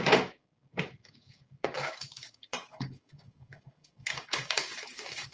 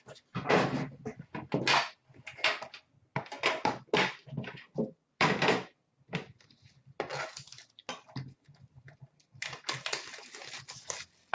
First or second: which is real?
second